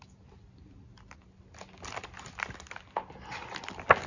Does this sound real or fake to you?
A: real